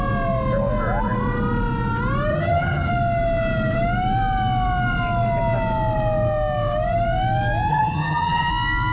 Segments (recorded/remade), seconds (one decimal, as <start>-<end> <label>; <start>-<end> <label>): 0.0-2.3 recorded; 2.3-2.9 remade; 2.9-7.7 recorded; 7.7-8.5 remade; 8.5-8.9 recorded